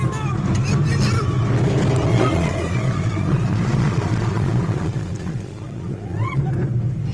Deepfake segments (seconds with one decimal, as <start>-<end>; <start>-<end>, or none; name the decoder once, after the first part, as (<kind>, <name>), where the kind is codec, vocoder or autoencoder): 2.1-6.4 (vocoder, Vocos)